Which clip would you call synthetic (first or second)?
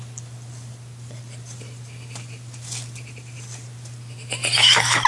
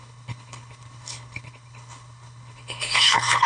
second